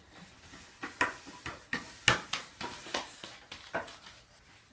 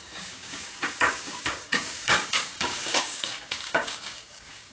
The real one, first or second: first